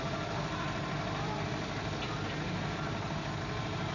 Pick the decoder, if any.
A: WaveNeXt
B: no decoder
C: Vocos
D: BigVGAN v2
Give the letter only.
B